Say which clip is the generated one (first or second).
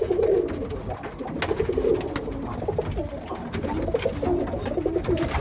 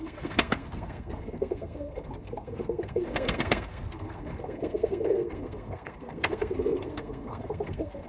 second